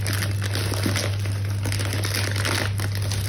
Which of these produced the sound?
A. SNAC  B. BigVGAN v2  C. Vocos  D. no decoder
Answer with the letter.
D